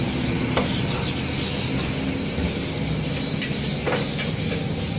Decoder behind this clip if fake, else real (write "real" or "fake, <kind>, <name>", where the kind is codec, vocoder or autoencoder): real